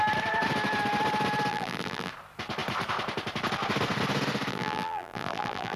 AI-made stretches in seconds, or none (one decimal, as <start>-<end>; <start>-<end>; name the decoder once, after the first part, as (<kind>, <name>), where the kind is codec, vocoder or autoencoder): 1.5-2.1 (vocoder, BigVGAN v2); 4.5-5.8